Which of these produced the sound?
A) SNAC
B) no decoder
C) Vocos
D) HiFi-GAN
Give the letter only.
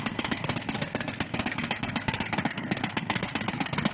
A